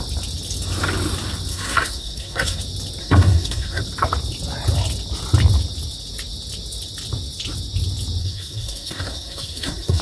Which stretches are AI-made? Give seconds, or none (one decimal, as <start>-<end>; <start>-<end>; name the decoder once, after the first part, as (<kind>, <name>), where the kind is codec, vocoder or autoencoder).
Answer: 1.5-2.6 (codec, SNAC); 3.0-3.8; 8.2-10.0